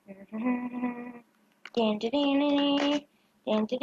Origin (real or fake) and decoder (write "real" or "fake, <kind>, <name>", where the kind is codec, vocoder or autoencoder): real